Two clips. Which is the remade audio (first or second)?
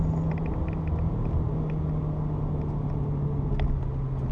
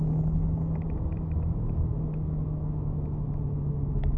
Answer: second